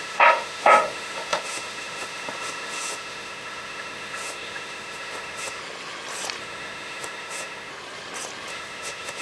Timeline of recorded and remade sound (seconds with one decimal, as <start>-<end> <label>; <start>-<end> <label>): 0.0-5.6 remade; 5.6-6.4 recorded; 6.4-7.7 remade; 7.7-8.5 recorded; 8.5-9.2 remade